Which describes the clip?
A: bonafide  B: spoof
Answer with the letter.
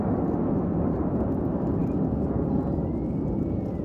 A